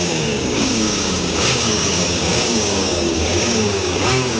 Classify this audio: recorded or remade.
remade